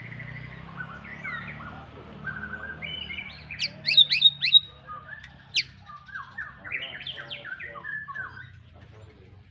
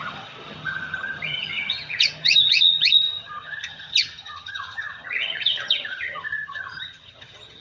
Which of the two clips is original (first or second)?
first